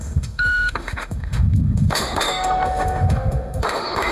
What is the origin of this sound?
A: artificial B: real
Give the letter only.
A